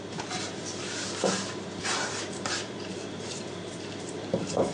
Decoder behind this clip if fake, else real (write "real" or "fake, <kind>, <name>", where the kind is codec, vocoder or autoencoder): fake, vocoder, BigVGAN v2